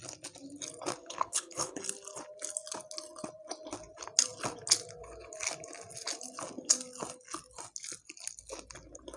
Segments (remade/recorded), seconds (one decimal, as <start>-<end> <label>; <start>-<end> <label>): 0.0-1.0 recorded; 1.0-1.8 remade; 1.8-9.2 recorded